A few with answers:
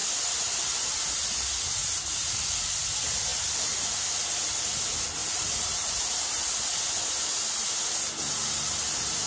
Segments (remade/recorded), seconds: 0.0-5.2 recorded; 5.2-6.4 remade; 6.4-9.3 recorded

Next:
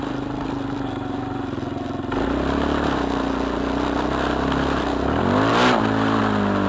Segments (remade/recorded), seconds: 0.0-6.7 recorded

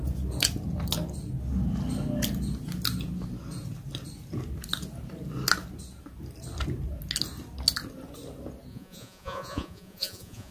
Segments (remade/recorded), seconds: 0.0-8.7 recorded; 8.7-10.5 remade

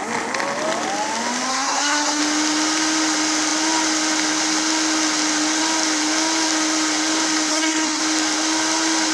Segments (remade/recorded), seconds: 0.0-1.5 recorded; 1.5-2.2 remade; 2.2-7.5 recorded; 7.5-8.0 remade; 8.0-9.1 recorded

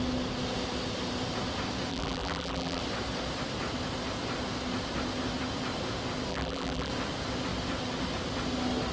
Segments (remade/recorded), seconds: 0.0-1.9 recorded; 1.9-2.8 remade; 2.8-6.3 recorded; 6.3-6.9 remade; 6.9-8.9 recorded

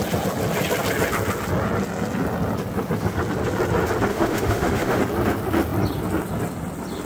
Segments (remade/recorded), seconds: 0.0-4.1 recorded; 4.1-5.0 remade; 5.0-7.0 recorded

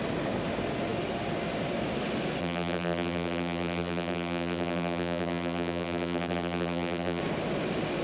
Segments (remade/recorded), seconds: 0.0-2.4 recorded; 2.4-7.2 remade; 7.2-8.0 recorded